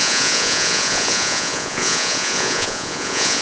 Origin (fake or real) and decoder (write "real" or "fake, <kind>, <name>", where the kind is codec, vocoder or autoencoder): fake, vocoder, Vocos